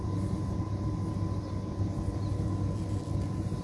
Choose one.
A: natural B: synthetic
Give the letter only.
A